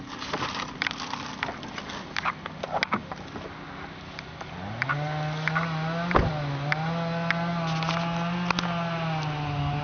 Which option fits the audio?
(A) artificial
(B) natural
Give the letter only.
B